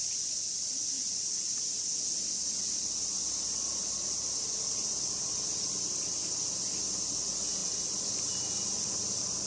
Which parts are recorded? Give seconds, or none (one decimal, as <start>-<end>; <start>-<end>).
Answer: 1.3-9.5